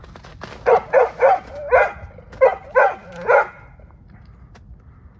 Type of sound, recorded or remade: recorded